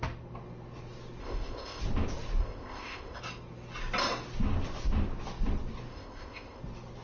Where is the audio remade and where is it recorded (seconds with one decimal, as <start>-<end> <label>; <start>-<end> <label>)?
0.0-1.2 recorded; 1.2-1.8 remade; 1.8-2.4 recorded; 2.4-3.2 remade; 3.2-5.9 recorded; 5.9-6.6 remade; 6.6-7.0 recorded